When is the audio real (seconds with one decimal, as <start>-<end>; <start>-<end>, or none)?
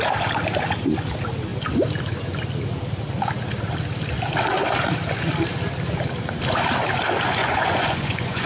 0.0-7.4